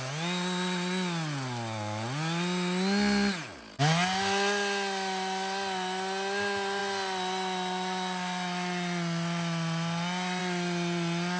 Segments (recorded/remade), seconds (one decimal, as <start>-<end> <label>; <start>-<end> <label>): 0.0-11.4 recorded